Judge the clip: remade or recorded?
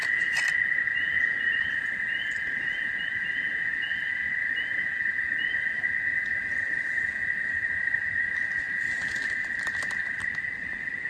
recorded